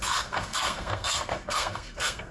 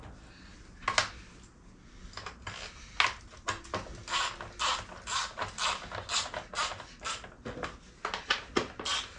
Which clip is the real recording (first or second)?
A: second